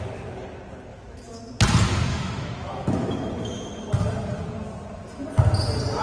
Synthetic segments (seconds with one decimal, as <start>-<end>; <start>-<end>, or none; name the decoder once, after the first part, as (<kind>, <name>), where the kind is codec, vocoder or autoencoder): 0.9-1.4 (autoencoder, DAC-VAE); 2.1-3.8